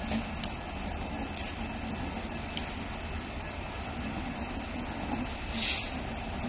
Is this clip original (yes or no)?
yes